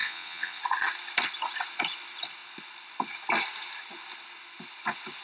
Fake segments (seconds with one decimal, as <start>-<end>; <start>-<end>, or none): 0.0-0.6